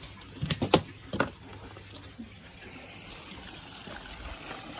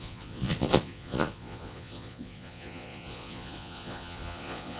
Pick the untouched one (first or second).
first